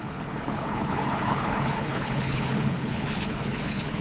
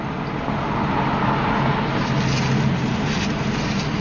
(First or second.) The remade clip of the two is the first